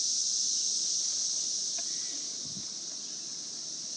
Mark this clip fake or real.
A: real